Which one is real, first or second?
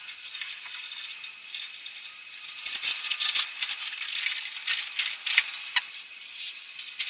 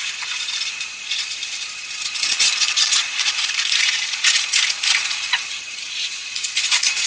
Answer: first